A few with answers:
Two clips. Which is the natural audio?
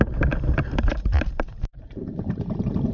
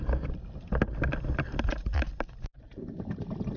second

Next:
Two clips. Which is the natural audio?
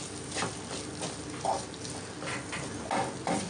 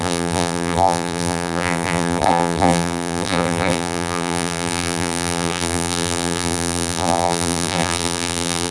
first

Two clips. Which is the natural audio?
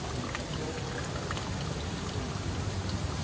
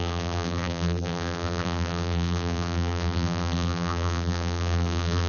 first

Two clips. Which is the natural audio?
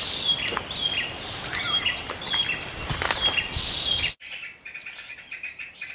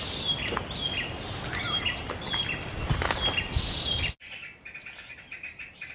second